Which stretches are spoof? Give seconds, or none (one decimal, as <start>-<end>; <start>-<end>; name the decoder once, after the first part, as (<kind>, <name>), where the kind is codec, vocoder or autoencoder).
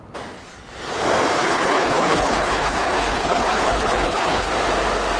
1.4-4.5 (codec, HILCodec)